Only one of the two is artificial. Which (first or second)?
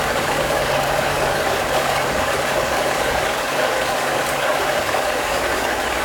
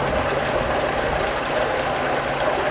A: first